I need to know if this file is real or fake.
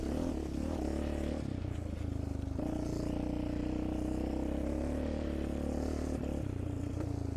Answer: real